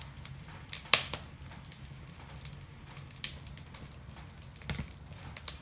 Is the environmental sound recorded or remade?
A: recorded